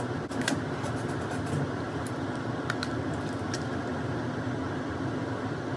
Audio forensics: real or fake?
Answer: real